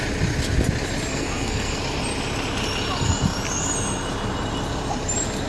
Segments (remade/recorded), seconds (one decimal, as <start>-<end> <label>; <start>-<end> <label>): 0.0-1.1 recorded; 1.1-1.8 remade; 1.8-5.5 recorded